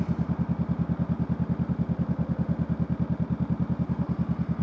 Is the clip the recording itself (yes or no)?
yes